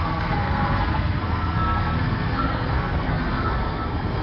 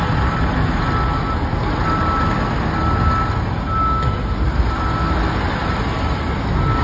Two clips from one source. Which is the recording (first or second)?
second